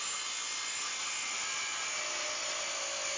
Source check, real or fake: real